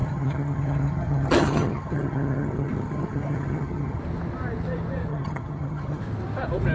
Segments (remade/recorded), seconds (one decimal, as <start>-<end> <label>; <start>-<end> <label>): 0.0-4.0 remade; 4.0-5.1 recorded; 5.1-6.0 remade; 6.0-6.7 recorded